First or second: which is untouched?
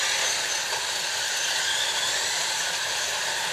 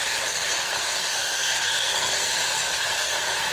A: first